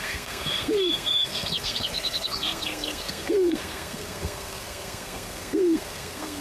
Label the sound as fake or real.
fake